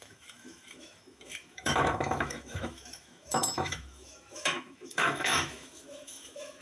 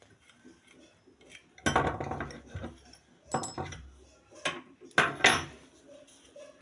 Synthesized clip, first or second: first